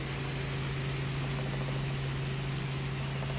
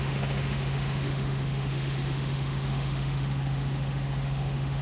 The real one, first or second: first